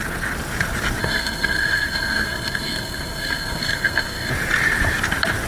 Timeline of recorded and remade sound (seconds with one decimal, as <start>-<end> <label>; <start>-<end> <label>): 0.0-1.0 recorded; 1.0-4.3 remade; 4.3-5.5 recorded